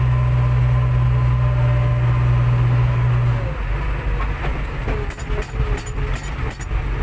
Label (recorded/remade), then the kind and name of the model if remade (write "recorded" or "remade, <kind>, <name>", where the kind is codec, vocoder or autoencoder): recorded